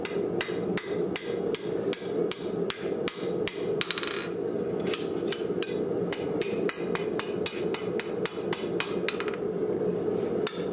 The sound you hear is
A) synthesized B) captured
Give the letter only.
B